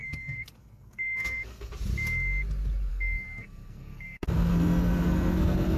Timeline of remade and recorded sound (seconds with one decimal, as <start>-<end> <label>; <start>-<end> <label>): 0.0-1.7 remade; 1.7-2.9 recorded; 2.9-5.8 remade